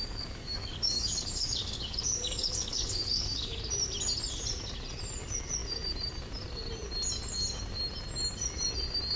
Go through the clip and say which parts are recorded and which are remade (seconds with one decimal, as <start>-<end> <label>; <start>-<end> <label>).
0.0-3.6 remade; 3.6-9.2 recorded